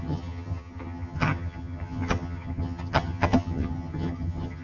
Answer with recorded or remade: remade